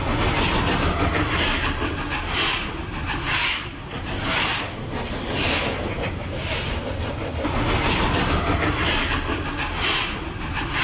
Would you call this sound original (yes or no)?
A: yes